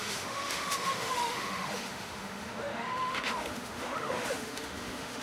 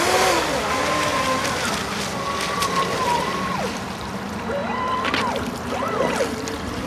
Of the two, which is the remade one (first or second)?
first